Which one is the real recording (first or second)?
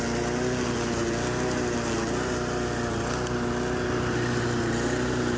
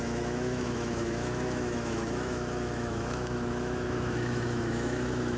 first